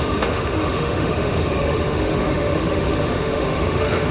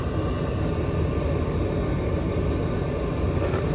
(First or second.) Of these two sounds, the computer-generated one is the first